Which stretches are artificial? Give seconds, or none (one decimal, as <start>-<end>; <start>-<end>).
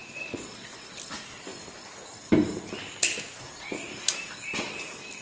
0.0-0.9